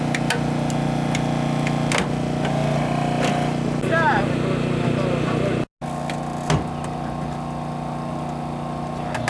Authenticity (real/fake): real